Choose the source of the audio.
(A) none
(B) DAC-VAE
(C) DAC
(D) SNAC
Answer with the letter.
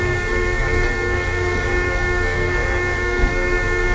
D